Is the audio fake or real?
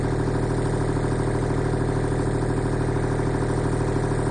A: real